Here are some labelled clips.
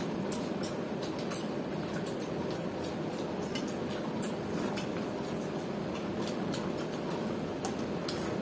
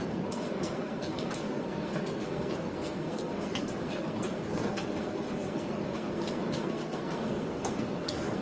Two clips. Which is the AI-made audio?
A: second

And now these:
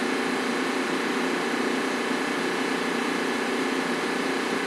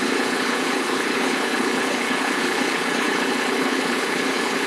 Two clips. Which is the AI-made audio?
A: second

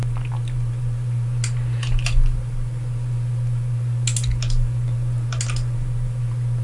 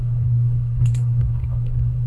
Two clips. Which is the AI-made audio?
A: second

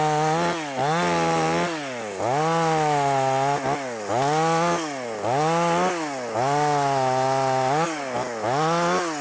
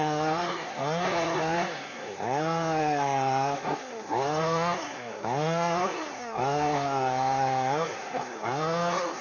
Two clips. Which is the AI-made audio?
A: second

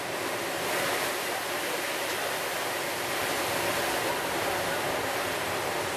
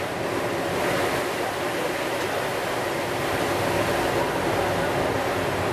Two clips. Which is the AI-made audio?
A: first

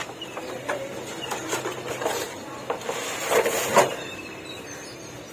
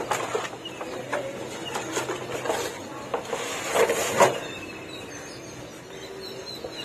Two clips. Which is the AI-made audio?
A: first